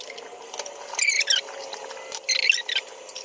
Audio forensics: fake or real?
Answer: real